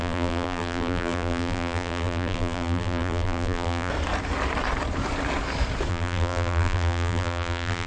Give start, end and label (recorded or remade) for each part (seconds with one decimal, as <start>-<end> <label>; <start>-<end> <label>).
0.0-3.9 remade; 3.9-5.9 recorded; 5.9-7.9 remade